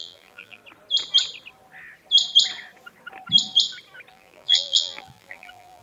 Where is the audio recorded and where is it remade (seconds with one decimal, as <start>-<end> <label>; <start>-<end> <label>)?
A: 0.0-0.6 remade; 0.6-4.1 recorded; 4.1-5.8 remade